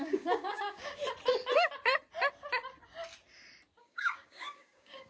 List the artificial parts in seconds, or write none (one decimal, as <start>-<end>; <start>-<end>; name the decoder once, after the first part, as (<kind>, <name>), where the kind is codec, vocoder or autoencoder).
0.0-1.0 (codec, DAC); 3.8-5.1